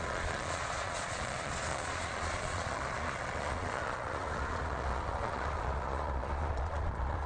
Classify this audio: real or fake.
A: fake